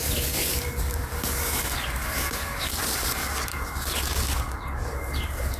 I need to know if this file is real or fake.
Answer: fake